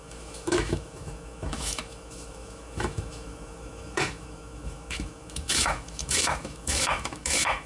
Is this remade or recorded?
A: remade